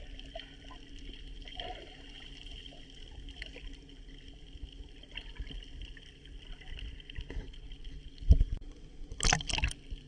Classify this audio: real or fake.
real